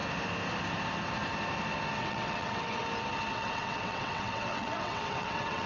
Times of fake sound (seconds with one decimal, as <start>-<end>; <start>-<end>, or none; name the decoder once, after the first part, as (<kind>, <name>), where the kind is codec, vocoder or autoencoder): 2.0-2.8 (vocoder, WaveNeXt); 3.3-5.7